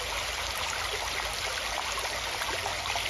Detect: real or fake real